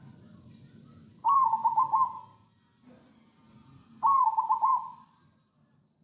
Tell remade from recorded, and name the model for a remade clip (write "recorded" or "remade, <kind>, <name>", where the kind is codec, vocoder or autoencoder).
remade, vocoder, BigVGAN v2